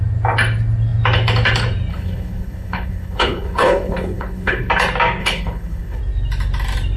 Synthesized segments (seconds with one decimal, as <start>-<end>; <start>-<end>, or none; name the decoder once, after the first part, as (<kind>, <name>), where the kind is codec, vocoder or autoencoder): 1.9-4.7 (codec, HILCodec); 5.2-6.0